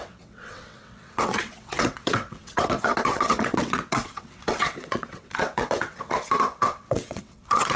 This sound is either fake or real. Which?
fake